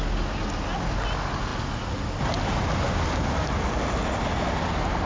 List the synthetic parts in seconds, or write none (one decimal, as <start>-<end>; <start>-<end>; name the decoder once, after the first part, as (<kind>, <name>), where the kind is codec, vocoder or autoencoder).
none